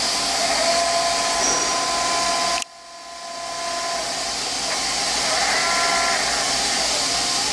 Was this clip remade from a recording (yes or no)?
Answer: no